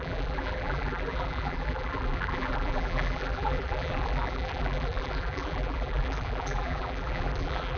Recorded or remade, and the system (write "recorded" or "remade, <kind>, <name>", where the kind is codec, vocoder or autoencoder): remade, vocoder, BigVGAN v2